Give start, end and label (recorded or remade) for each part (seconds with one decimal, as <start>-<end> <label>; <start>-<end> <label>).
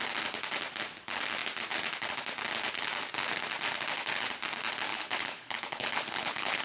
0.0-4.9 recorded; 4.9-6.6 remade